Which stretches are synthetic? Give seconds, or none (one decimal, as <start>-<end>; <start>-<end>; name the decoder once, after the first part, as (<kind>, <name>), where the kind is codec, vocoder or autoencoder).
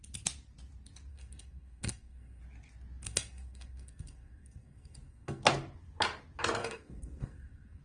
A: 1.1-2.4 (codec, SNAC); 3.0-5.4; 6.6-7.8